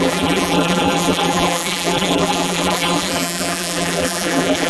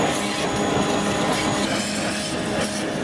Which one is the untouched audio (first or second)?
second